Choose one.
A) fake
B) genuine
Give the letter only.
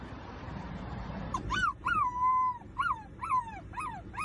A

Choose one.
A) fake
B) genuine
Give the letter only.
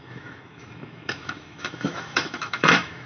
A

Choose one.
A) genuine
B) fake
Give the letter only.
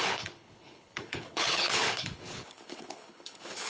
B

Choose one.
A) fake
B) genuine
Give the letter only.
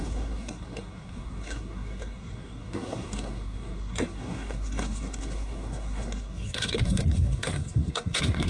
A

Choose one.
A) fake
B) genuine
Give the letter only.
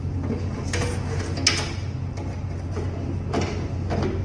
B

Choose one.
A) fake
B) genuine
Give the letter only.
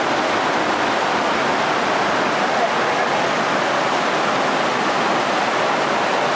B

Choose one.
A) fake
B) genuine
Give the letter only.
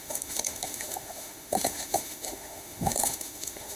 A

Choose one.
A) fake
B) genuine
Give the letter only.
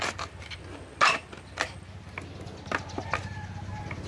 B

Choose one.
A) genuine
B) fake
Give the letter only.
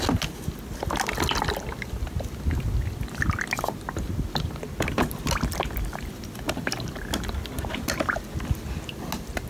A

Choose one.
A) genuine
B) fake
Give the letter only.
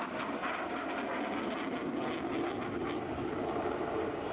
A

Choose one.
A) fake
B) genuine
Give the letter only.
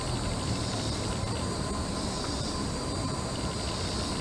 A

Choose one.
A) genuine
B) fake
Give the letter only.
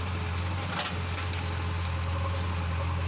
A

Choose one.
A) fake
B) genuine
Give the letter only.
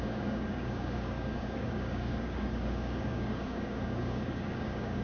A